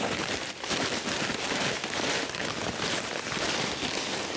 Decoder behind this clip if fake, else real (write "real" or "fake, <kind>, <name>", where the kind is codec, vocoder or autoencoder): real